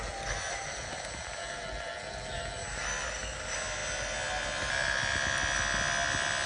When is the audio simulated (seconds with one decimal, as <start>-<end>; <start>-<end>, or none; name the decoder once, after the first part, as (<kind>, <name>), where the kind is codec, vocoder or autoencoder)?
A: none